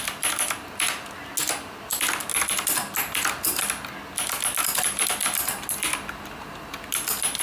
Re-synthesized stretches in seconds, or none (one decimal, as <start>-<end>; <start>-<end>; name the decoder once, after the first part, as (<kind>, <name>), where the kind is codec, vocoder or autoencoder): none